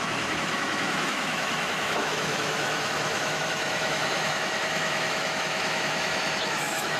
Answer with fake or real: fake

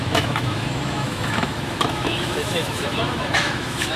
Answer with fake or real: fake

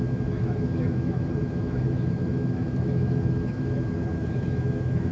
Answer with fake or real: fake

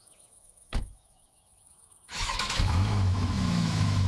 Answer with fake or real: fake